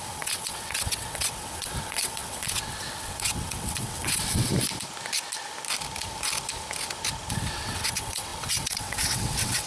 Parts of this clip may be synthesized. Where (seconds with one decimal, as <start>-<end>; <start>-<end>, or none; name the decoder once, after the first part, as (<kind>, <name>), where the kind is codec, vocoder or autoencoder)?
0.0-4.5 (vocoder, WaveNeXt); 7.3-9.7